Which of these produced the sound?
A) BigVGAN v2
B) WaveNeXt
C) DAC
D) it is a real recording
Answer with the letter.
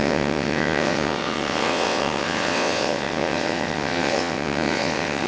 B